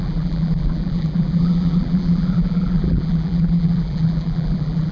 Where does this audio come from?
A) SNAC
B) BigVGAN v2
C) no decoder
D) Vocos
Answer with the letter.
B